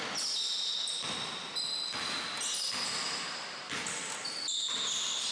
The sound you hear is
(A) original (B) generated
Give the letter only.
A